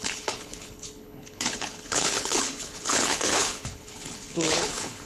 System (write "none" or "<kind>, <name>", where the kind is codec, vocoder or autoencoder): codec, HILCodec